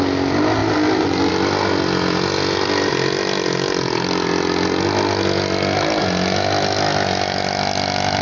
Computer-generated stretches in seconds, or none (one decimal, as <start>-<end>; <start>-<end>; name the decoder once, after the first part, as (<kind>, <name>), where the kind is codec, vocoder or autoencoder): none